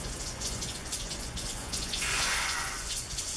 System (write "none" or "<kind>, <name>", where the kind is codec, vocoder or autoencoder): vocoder, Vocos